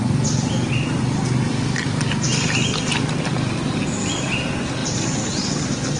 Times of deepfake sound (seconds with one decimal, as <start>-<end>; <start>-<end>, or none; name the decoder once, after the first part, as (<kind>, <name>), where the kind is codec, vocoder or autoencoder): 4.8-5.6 (vocoder, BigVGAN v2)